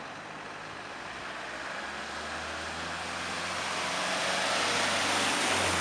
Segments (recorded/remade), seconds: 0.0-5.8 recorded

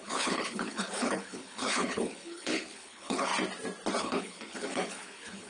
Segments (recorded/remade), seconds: 0.0-3.3 remade; 3.3-4.0 recorded; 4.0-5.5 remade